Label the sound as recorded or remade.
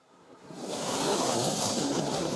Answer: remade